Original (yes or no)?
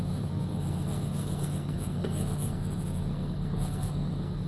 no